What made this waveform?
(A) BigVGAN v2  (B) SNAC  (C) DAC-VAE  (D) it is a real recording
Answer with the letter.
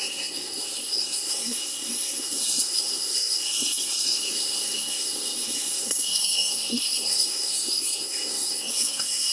B